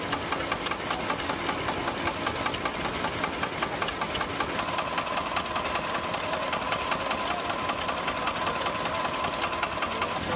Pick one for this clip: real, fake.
real